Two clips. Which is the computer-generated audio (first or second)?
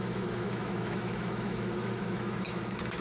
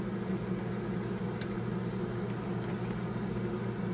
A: first